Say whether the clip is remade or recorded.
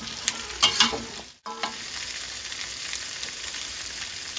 recorded